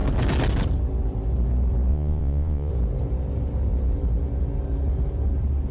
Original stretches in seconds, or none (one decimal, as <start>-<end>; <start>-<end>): 0.0-1.9; 2.7-5.7